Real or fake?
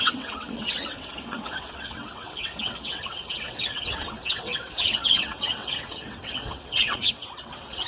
fake